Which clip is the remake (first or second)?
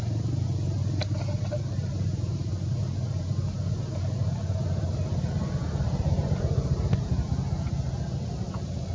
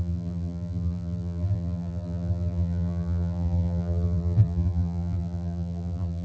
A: second